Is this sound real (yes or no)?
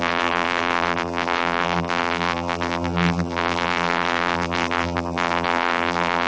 no